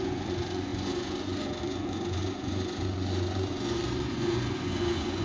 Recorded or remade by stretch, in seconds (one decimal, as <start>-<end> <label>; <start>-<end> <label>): 0.0-5.2 remade